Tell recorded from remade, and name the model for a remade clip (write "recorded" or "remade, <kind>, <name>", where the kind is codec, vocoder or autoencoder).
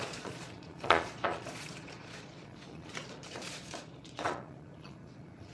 remade, vocoder, Vocos